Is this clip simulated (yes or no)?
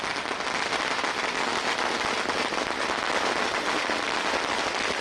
no